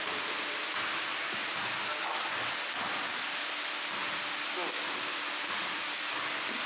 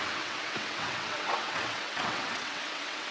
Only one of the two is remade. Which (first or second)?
second